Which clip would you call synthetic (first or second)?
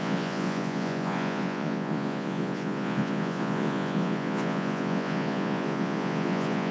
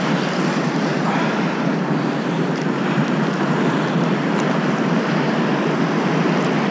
first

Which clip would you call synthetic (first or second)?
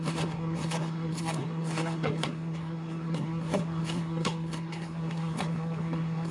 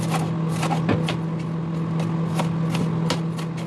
first